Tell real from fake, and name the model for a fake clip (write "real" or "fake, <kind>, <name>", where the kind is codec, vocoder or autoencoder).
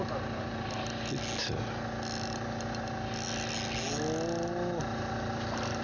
real